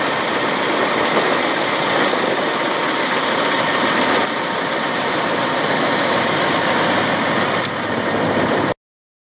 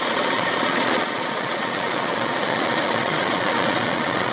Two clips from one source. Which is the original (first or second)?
first